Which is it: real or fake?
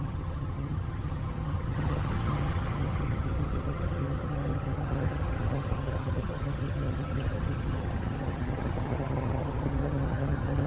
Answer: fake